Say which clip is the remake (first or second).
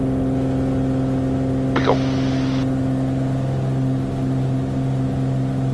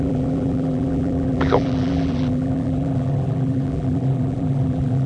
second